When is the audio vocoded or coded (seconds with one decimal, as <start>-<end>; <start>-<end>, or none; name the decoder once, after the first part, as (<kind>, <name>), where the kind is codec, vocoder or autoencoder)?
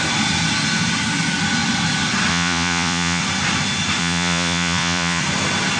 2.3-3.2 (vocoder, Vocos); 4.0-5.2